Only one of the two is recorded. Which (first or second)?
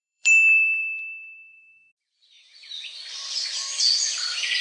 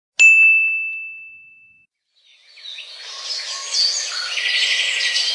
second